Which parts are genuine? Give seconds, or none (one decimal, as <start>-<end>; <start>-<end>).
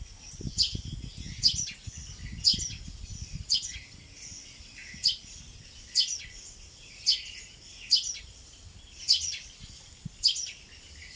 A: 0.0-6.8; 7.6-11.2